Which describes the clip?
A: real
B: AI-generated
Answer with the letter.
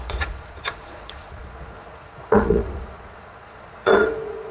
B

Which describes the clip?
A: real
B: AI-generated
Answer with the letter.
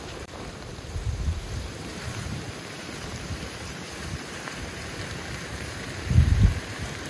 B